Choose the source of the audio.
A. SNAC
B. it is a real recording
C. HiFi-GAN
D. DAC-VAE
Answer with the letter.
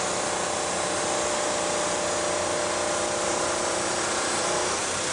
B